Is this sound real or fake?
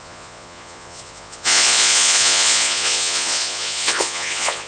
fake